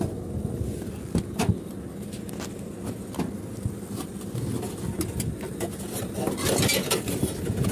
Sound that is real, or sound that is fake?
real